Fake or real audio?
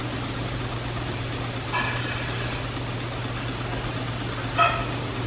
real